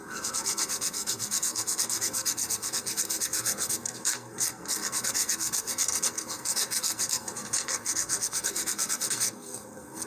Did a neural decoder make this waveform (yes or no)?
yes